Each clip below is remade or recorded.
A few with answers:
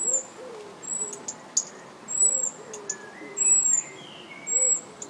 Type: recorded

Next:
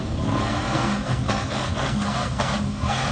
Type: remade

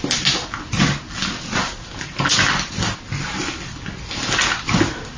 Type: recorded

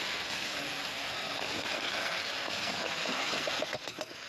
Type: remade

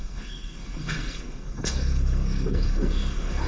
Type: remade